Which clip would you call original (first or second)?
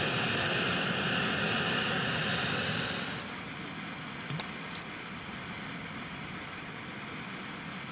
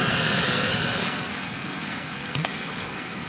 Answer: first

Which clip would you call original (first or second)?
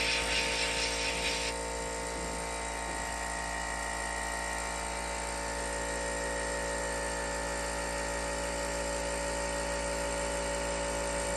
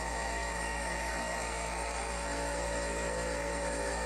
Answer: first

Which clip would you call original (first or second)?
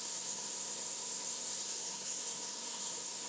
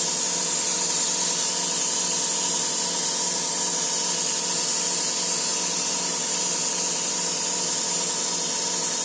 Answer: second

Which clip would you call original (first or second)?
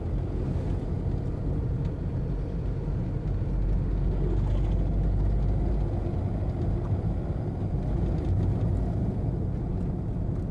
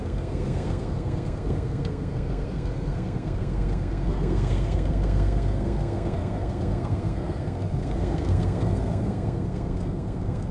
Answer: first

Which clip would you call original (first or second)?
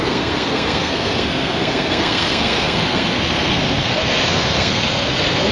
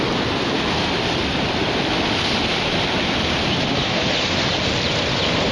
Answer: second